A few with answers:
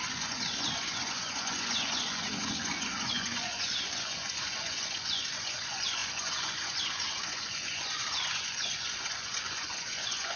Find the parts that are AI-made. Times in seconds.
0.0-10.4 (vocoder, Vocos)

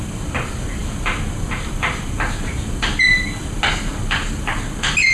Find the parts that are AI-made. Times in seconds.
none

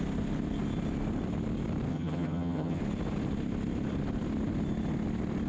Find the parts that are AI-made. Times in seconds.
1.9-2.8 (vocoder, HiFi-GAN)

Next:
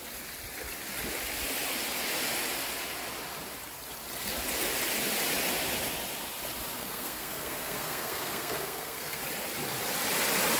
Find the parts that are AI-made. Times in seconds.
6.8-9.2 (codec, SNAC)

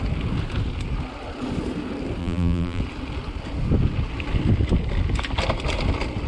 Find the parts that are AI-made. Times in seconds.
2.2-2.8 (vocoder, BigVGAN v2)